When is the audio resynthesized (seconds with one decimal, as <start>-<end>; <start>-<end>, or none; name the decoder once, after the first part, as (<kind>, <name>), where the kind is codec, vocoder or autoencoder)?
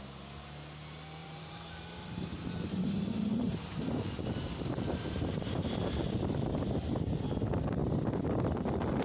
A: 1.2-2.5 (vocoder, BigVGAN v2); 3.3-6.5; 7.8-9.0